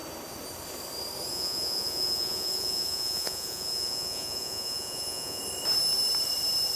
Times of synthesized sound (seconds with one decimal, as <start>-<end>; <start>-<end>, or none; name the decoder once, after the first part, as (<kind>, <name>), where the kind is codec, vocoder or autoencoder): 1.3-5.4 (vocoder, Vocos)